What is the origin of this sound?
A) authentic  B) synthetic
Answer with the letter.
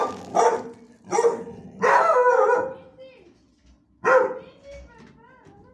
A